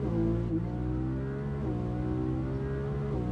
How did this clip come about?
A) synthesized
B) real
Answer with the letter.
B